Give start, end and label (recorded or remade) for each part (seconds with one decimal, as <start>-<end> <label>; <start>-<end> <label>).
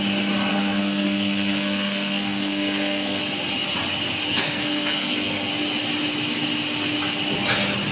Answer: 0.0-0.5 recorded; 0.5-3.2 remade; 3.2-4.3 recorded; 4.3-5.5 remade; 5.5-7.9 recorded